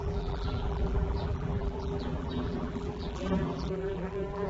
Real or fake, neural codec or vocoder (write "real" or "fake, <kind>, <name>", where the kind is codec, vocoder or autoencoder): fake, vocoder, BigVGAN v2